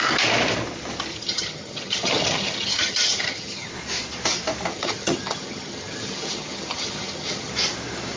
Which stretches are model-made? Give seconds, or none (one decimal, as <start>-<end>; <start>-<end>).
1.1-3.7; 4.7-7.5